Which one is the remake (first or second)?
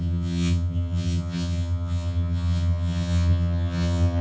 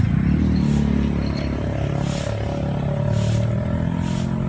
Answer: first